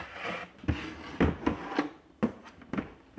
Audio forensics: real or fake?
real